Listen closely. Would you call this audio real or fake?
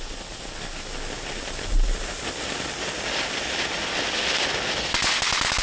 real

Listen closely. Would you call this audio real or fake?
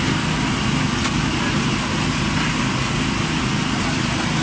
real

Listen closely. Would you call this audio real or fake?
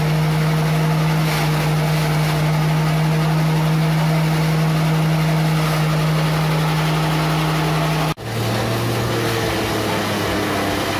real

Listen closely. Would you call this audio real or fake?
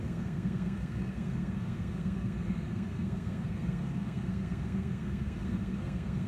fake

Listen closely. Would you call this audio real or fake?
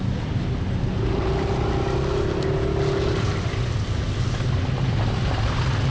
real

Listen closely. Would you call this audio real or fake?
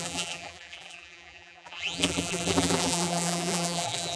fake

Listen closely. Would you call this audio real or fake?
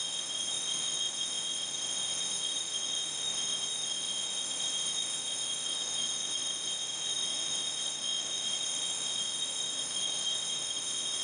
fake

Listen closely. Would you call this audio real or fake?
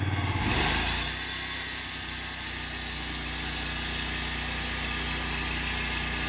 real